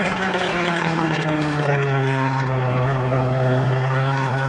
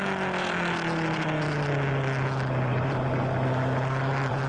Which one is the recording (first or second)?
second